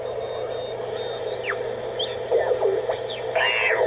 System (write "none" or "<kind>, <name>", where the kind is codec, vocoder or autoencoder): none